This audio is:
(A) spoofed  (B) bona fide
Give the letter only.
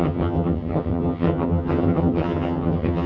A